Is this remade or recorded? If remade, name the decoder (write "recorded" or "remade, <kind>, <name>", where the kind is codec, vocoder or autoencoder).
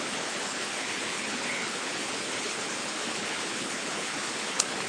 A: remade, codec, HILCodec